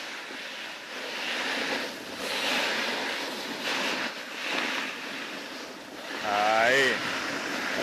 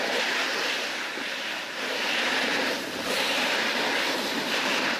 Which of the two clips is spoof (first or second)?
second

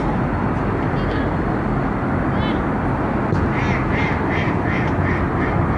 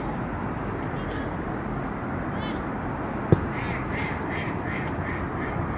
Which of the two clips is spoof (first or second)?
second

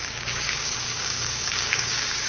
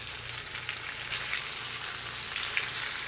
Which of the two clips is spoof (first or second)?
first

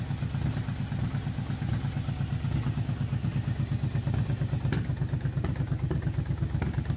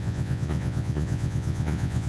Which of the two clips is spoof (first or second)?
second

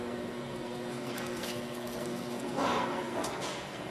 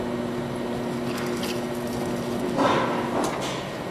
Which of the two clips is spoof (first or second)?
first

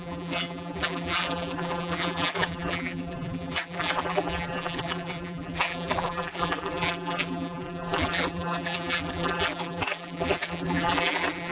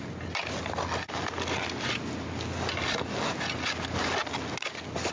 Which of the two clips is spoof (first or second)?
first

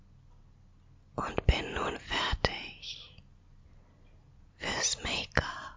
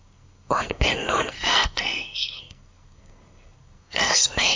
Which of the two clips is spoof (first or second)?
second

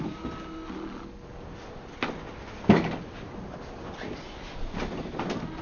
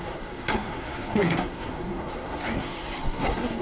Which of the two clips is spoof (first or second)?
second